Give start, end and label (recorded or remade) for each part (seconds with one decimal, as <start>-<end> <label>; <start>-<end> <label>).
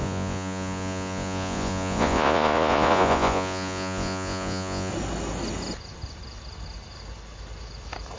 0.0-4.9 remade; 4.9-8.2 recorded